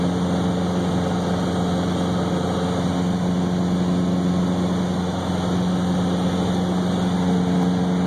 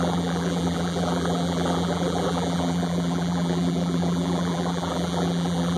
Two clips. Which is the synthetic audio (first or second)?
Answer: second